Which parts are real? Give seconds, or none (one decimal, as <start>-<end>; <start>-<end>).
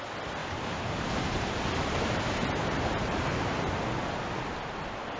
0.0-0.4; 3.5-5.2